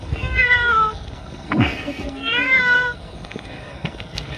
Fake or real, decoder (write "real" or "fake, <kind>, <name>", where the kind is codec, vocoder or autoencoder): fake, codec, SNAC